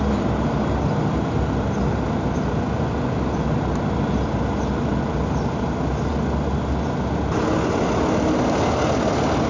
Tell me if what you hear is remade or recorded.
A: recorded